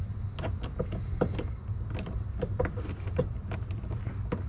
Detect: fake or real real